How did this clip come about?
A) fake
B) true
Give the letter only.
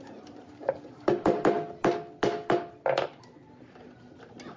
B